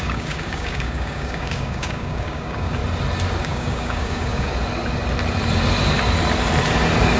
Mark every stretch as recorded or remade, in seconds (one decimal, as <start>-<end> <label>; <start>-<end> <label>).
0.0-2.8 remade; 2.8-3.4 recorded; 3.4-4.5 remade; 4.5-7.2 recorded